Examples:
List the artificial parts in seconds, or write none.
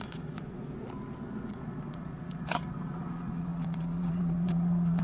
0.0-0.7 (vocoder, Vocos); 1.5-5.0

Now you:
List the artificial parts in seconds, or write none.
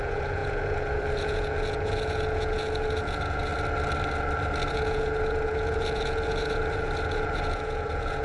0.0-3.5 (vocoder, Vocos); 4.7-8.2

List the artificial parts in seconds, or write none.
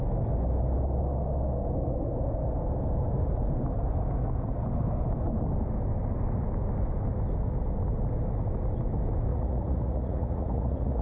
9.3-11.0 (vocoder, Vocos)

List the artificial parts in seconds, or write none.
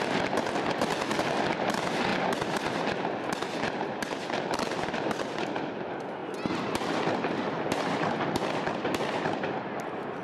none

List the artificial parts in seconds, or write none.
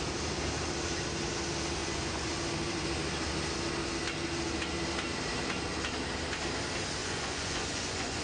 1.8-2.3 (vocoder, Vocos); 7.0-8.2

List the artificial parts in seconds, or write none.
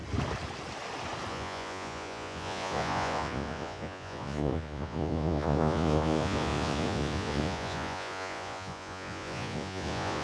1.3-10.2 (vocoder, Vocos)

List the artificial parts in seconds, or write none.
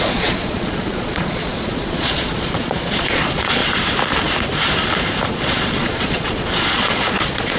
0.0-3.6 (vocoder, Vocos); 5.3-7.6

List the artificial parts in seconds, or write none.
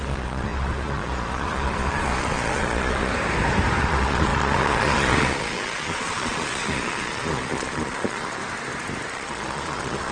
0.0-3.1 (vocoder, Vocos); 3.8-8.4; 9.1-10.1